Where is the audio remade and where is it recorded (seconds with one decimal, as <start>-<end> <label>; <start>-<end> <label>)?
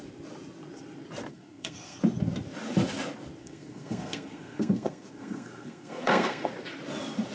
0.0-1.3 recorded; 1.3-2.0 remade; 2.0-3.4 recorded; 3.4-6.5 remade; 6.5-7.3 recorded